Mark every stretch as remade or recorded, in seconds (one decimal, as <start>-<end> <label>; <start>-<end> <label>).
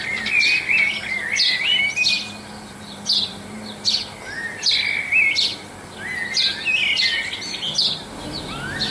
0.0-8.9 recorded